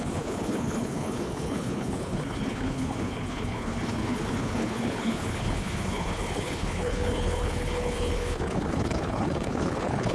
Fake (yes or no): yes